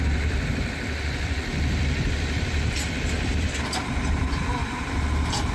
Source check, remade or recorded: remade